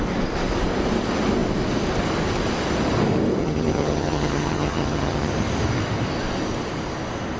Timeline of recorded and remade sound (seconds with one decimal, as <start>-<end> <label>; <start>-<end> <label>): 0.0-3.4 recorded; 3.4-5.3 remade; 5.3-7.4 recorded